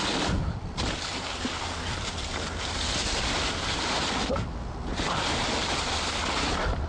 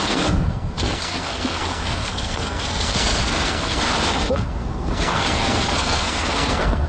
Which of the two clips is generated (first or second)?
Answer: second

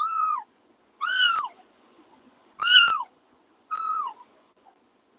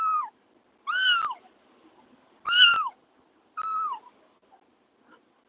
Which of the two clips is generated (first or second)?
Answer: first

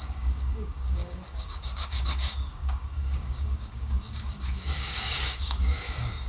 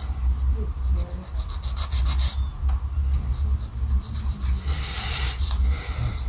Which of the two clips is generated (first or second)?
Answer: first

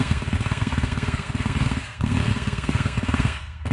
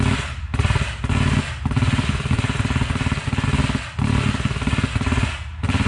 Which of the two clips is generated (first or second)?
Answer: first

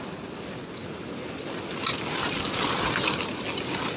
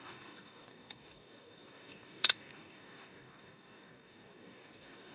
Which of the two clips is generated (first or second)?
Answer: second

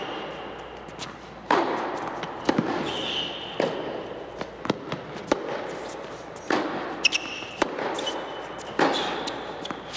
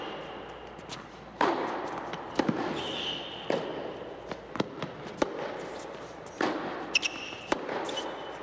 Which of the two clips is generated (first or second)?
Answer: second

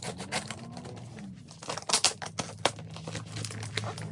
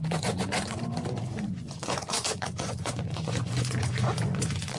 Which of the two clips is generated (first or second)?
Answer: second